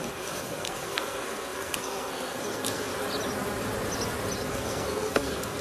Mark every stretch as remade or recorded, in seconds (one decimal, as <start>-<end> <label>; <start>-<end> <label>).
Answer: 0.0-2.9 remade; 2.9-4.5 recorded; 4.5-5.6 remade